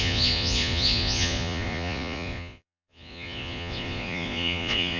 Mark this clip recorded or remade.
remade